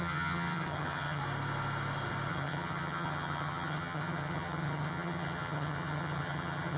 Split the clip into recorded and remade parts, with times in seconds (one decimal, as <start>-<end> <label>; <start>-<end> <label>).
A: 0.0-1.2 remade; 1.2-2.3 recorded; 2.3-6.8 remade

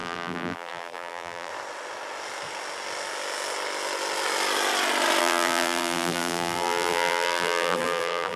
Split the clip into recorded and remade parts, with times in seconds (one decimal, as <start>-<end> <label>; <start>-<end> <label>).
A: 0.0-1.5 remade; 1.5-5.2 recorded; 5.2-8.4 remade

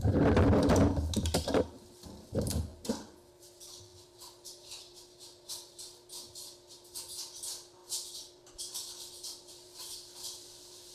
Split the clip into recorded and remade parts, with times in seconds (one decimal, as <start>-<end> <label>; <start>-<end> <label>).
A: 0.0-7.8 remade; 7.8-8.5 recorded; 8.5-10.9 remade

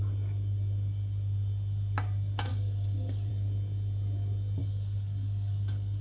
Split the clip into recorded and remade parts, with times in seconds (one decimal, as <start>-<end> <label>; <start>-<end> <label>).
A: 0.0-2.5 recorded; 2.5-3.3 remade; 3.3-4.6 recorded; 4.6-6.0 remade